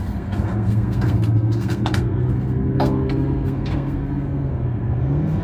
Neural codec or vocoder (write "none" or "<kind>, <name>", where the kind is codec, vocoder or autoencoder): codec, SNAC